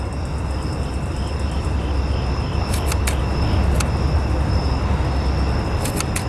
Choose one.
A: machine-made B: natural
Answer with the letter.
B